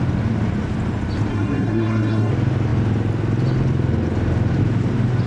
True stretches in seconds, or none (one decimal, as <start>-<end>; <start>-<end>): 0.0-1.3; 2.3-5.3